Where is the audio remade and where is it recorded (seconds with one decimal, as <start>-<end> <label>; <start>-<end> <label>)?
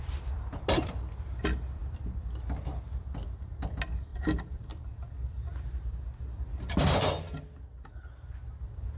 0.0-4.1 recorded; 4.1-5.1 remade; 5.1-9.0 recorded